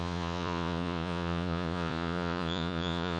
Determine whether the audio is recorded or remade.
remade